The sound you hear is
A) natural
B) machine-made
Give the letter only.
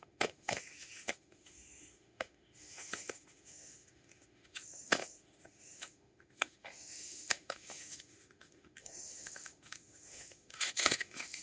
B